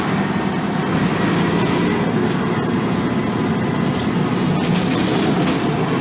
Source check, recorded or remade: recorded